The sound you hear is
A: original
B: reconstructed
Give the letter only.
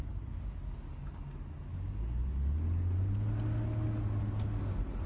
A